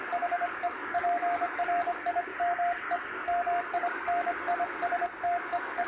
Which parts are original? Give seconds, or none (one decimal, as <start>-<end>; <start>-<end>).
2.3-3.1; 4.5-5.4